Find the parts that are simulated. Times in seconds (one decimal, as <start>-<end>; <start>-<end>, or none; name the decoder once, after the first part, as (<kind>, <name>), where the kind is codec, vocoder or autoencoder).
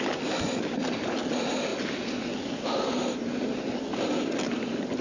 none